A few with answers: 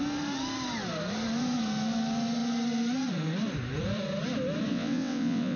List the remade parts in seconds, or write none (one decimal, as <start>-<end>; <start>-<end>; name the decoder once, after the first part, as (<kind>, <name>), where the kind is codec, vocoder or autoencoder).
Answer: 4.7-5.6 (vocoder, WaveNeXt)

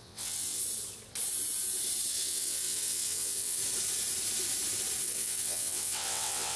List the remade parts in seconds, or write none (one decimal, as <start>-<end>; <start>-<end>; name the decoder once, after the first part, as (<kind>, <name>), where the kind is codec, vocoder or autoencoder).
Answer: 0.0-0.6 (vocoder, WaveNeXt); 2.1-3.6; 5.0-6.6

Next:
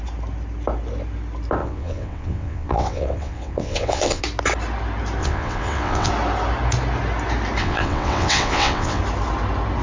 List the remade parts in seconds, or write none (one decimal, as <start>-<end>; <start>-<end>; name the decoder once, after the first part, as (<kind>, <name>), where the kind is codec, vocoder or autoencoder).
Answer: 1.6-4.2 (vocoder, WaveNeXt); 5.2-6.1; 7.6-9.0